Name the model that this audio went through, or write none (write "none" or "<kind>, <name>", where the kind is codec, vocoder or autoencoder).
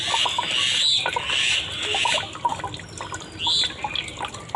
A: none